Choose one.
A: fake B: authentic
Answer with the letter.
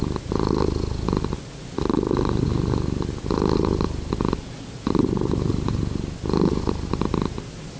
B